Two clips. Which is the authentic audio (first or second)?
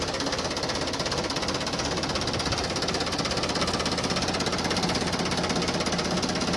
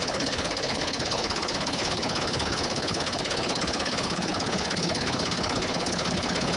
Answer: first